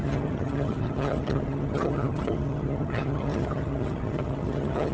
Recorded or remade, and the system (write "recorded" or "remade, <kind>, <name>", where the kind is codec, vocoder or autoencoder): remade, vocoder, HiFi-GAN